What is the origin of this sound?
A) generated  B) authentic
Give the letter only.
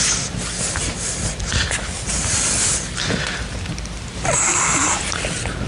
B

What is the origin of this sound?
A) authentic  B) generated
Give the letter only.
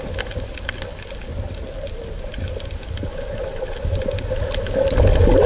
A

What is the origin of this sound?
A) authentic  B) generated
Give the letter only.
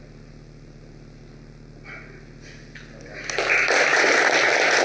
A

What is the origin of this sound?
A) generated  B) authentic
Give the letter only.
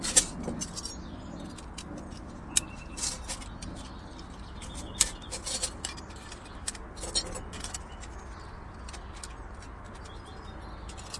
B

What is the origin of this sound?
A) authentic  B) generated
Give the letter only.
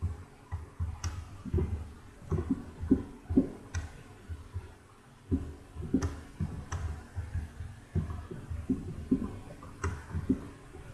A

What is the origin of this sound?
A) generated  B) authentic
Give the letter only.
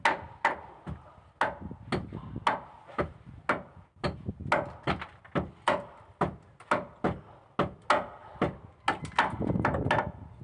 B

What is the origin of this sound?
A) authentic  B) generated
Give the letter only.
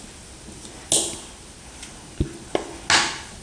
A